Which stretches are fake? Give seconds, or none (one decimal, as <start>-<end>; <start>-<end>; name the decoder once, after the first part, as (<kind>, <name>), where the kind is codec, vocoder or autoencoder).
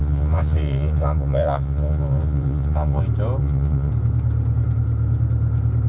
0.0-3.0 (vocoder, Vocos); 3.4-3.9